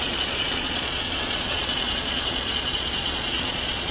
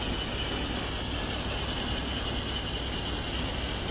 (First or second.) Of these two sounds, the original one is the second